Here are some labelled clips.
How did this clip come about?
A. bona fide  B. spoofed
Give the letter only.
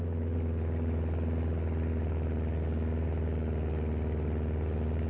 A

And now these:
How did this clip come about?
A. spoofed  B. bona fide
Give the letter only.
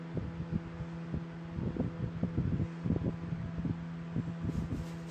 B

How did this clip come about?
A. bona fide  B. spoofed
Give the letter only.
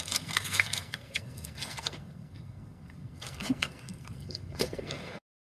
B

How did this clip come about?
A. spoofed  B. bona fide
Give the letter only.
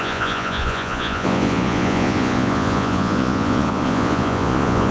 A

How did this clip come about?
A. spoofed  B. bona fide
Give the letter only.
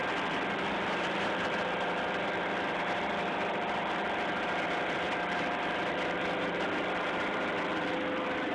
A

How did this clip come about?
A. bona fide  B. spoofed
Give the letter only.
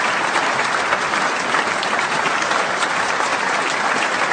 A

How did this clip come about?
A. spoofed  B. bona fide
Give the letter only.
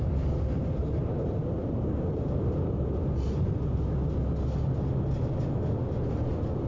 B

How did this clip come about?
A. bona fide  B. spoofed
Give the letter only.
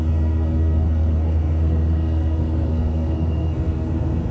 B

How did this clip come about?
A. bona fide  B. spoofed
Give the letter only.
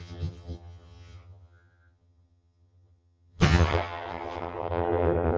B